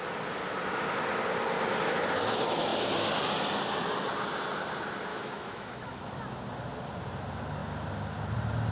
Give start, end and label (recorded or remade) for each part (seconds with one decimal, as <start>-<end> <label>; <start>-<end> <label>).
0.0-5.1 recorded; 5.1-6.1 remade; 6.1-8.7 recorded